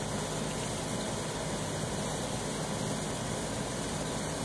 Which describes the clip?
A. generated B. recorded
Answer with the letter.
B